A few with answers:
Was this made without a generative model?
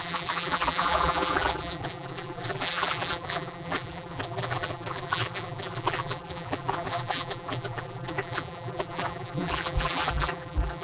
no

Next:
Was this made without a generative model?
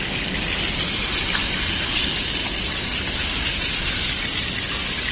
yes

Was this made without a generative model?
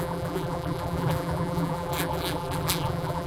no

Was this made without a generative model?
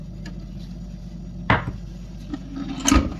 yes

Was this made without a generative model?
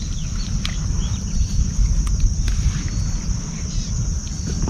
yes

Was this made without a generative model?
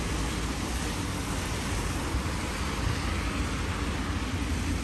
yes